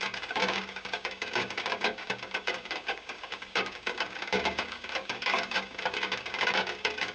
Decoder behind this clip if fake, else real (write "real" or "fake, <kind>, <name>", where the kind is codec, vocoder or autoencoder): fake, codec, DAC